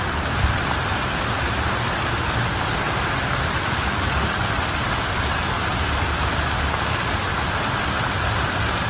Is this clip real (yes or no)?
yes